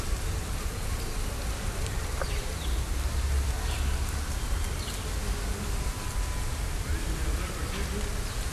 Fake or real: real